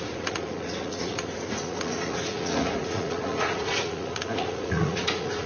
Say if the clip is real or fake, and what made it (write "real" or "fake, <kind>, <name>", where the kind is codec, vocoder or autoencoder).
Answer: fake, vocoder, Vocos